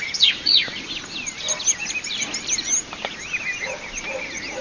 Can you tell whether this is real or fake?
real